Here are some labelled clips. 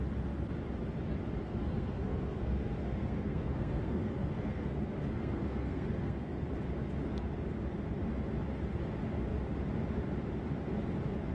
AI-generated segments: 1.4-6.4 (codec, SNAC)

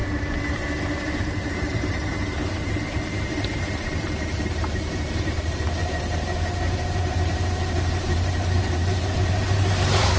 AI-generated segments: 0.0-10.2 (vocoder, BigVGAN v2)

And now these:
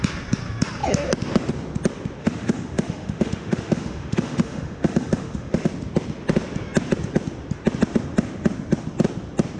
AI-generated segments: 2.2-5.7 (autoencoder, DAC-VAE)

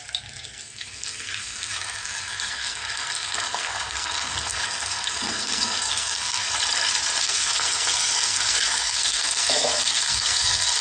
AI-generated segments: 0.0-6.5 (codec, SNAC); 7.2-10.8

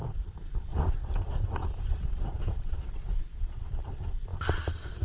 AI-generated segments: 0.7-3.7 (vocoder, Vocos)

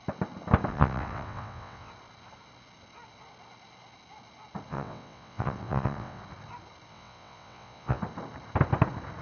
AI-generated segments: 0.7-1.9 (vocoder, WaveNeXt); 4.7-6.2; 6.9-8.0